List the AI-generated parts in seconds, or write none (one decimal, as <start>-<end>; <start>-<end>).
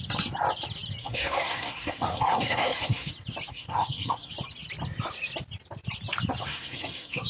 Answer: 1.0-3.1; 3.5-4.3; 6.4-7.3